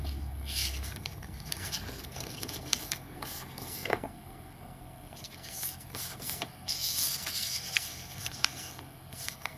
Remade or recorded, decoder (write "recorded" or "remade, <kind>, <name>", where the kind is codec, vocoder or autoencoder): remade, codec, SNAC